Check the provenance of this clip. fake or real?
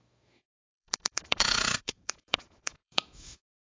fake